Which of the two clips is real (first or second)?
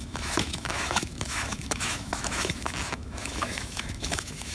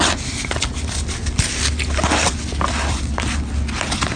second